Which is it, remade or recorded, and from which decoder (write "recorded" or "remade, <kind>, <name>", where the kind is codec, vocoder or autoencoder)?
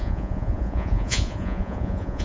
remade, vocoder, Vocos